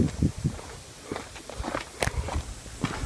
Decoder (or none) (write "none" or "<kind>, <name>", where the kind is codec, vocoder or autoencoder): none